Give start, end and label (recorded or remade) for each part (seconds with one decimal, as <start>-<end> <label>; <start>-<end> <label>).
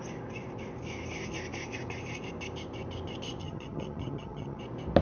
0.0-3.4 recorded; 3.4-4.6 remade; 4.6-5.0 recorded